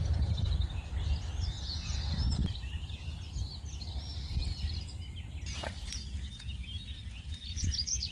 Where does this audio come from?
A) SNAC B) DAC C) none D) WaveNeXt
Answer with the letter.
C